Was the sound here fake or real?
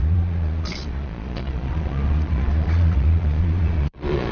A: fake